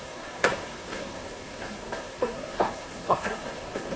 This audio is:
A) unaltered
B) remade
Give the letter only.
B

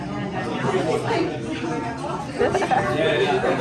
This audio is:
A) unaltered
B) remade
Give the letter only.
A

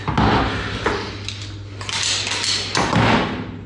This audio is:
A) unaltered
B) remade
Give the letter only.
A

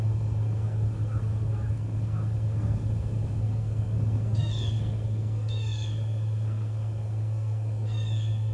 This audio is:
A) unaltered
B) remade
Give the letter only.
B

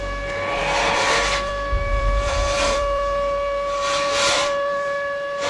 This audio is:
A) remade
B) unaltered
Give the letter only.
A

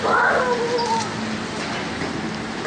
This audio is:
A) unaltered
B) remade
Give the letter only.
A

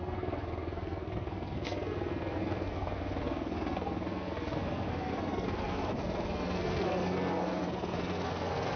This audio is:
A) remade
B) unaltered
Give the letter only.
A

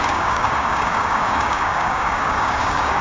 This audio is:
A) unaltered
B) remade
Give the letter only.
B